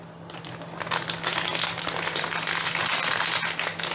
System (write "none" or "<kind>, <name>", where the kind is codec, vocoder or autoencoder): none